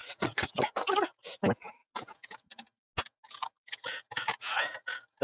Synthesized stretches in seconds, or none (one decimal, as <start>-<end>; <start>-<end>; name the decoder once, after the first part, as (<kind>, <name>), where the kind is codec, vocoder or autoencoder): 0.0-1.1 (vocoder, WaveNeXt)